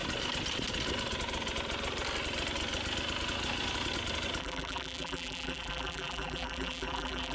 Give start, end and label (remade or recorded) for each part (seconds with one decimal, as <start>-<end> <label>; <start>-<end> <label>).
0.0-4.4 recorded; 4.4-7.3 remade